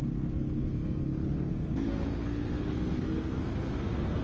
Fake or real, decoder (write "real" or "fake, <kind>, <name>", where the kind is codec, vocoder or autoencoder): fake, codec, SNAC